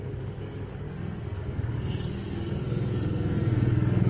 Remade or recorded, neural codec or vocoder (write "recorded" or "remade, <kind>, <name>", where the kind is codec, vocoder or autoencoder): remade, codec, SNAC